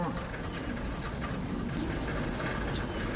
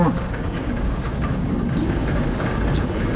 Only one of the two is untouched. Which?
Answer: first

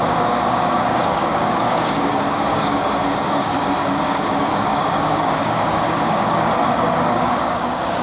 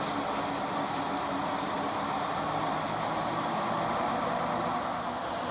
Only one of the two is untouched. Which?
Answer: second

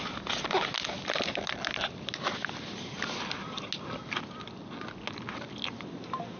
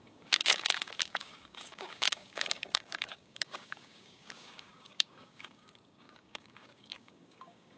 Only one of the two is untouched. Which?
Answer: first